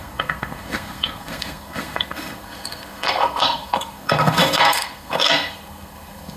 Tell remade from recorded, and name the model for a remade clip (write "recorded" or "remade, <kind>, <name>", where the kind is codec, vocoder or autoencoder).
remade, codec, SNAC